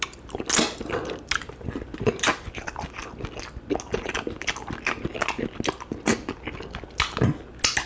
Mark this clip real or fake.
real